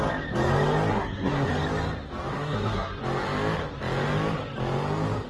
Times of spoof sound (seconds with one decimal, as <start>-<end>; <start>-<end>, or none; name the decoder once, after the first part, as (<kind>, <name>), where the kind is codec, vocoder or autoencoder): 0.9-1.5 (codec, SNAC); 2.3-3.0